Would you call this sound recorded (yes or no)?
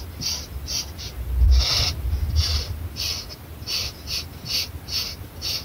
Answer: yes